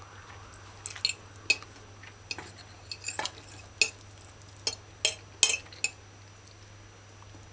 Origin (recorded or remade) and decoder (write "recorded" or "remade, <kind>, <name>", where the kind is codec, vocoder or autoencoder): recorded